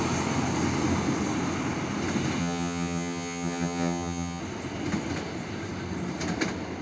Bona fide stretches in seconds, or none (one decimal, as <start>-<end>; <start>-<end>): 0.0-2.4; 4.4-6.8